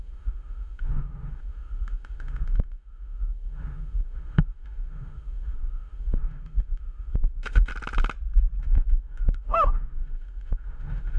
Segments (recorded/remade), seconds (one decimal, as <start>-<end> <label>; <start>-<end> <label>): 0.0-7.7 remade; 7.7-8.6 recorded; 8.6-11.2 remade